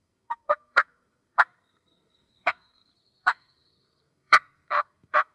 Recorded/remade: remade